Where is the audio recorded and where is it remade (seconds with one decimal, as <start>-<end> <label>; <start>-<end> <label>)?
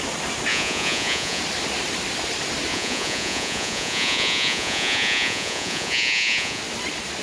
0.0-0.5 recorded; 0.5-1.4 remade; 1.4-2.7 recorded; 2.7-6.6 remade; 6.6-7.2 recorded